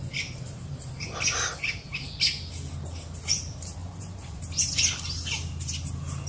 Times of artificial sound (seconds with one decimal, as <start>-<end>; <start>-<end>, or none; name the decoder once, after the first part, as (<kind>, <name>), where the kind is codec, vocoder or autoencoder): 3.8-4.4 (vocoder, Vocos)